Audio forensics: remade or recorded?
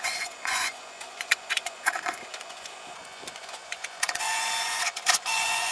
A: remade